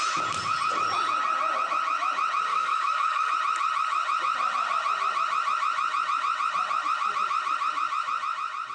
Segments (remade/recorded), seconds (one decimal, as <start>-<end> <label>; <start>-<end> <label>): 0.0-2.5 recorded; 2.5-3.3 remade; 3.3-8.7 recorded

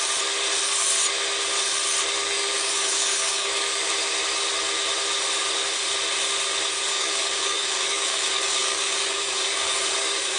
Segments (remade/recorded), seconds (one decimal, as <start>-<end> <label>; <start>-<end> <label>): 0.0-2.2 recorded; 2.2-3.9 remade; 3.9-6.9 recorded; 6.9-10.4 remade

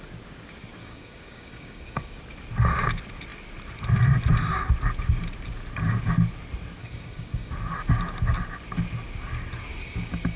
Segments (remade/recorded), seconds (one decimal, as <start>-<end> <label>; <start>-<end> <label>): 0.0-0.8 recorded; 0.8-2.2 remade; 2.2-6.8 recorded; 6.8-7.5 remade; 7.5-9.8 recorded; 9.8-10.4 remade

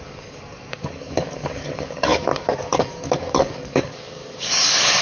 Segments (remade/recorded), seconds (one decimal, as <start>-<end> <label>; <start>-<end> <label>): 0.0-5.0 remade

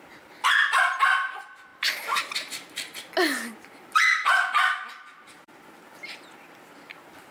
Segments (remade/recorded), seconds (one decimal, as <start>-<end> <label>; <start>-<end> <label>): 0.0-7.3 recorded

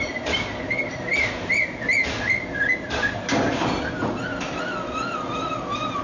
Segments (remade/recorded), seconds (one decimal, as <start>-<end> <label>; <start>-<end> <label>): 0.0-6.0 recorded

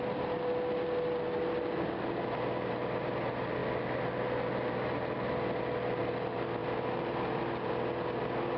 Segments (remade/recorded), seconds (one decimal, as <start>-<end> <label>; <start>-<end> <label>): 0.0-8.6 recorded

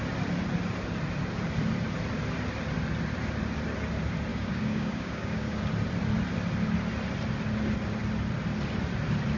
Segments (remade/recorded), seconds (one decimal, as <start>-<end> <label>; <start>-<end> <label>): 0.0-4.3 recorded; 4.3-5.6 remade; 5.6-9.4 recorded